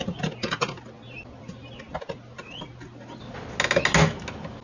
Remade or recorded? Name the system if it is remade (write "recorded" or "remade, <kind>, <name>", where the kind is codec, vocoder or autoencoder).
recorded